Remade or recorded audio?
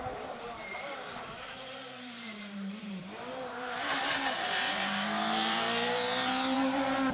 remade